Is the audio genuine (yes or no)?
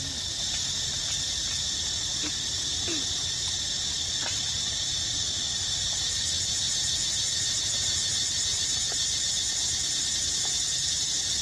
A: yes